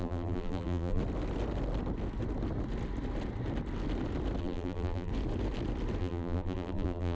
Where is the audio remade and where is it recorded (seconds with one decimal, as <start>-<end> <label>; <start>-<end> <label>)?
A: 0.0-1.0 remade; 1.0-4.4 recorded; 4.4-5.1 remade; 5.1-6.0 recorded; 6.0-7.1 remade